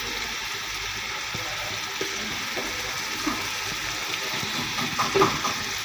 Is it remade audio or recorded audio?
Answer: recorded